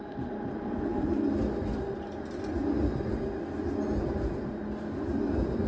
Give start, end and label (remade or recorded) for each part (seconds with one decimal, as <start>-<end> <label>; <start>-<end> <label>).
0.0-5.7 recorded